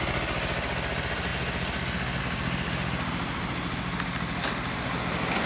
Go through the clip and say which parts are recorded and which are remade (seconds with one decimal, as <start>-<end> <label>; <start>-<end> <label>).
0.0-5.5 recorded